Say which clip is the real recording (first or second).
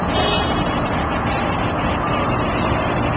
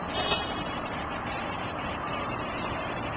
first